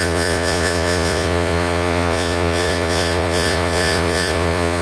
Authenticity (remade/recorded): remade